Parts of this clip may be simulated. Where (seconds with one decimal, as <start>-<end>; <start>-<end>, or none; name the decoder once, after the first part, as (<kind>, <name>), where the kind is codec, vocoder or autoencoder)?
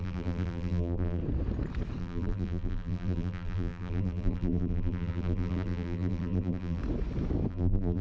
0.0-1.2 (vocoder, BigVGAN v2); 2.0-6.8; 7.5-8.0